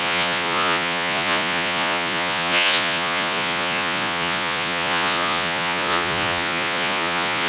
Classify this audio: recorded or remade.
remade